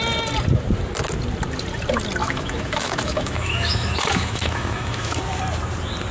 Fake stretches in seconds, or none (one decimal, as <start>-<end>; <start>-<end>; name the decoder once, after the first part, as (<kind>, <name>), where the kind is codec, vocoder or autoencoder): 2.2-5.2 (autoencoder, DAC-VAE)